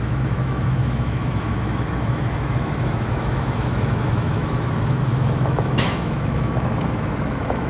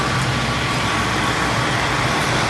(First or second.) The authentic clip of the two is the second